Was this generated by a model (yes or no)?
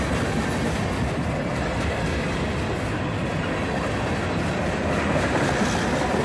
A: no